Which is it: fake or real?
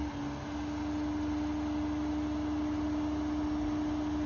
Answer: real